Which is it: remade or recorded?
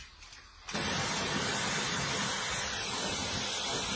recorded